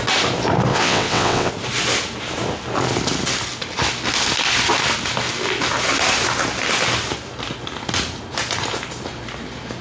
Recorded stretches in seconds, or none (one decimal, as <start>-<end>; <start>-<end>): 0.0-0.7; 1.5-9.8